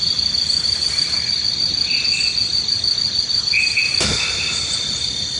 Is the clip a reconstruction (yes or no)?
no